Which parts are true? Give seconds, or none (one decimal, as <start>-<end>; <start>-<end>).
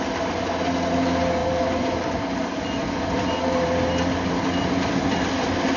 0.0-1.4; 4.9-5.8